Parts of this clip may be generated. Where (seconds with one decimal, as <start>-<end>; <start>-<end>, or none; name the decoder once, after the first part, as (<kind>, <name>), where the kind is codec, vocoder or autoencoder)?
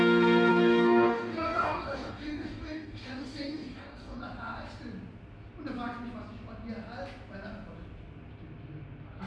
0.5-4.2 (codec, DAC)